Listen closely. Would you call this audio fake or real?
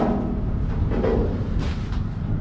real